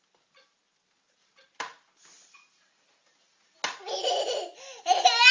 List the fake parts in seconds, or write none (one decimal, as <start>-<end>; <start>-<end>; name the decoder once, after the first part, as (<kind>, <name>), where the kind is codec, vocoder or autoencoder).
none